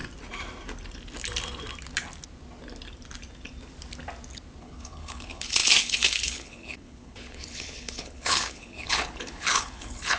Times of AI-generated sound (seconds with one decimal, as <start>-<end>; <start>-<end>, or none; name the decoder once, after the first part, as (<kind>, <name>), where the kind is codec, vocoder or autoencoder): 4.6-10.2 (codec, HILCodec)